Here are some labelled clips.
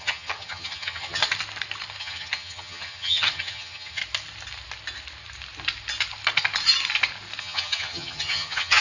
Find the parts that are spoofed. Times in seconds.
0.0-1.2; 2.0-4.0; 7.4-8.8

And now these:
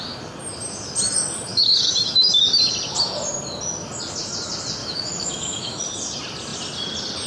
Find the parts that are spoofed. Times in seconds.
1.5-2.3; 4.8-5.8

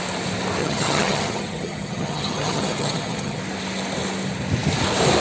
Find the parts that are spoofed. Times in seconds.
0.6-3.4

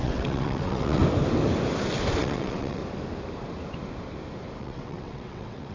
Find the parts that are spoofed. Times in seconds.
0.0-1.0; 2.2-2.8; 4.6-5.7